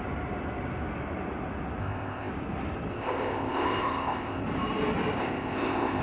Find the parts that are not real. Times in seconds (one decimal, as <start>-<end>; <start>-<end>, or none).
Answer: 1.8-2.3; 2.9-4.4; 5.2-6.0